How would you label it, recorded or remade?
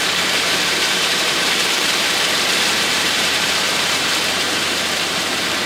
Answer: remade